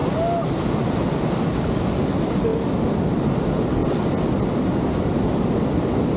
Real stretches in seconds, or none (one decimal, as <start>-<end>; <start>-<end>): 0.0-6.2

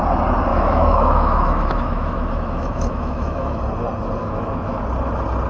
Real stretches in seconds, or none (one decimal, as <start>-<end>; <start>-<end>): 0.0-0.5; 3.6-4.2; 4.8-5.5

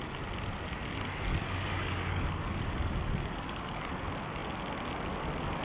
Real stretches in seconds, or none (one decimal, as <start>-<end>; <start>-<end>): 0.0-1.3; 3.9-5.6